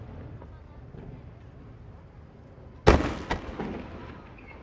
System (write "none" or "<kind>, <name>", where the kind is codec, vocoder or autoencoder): none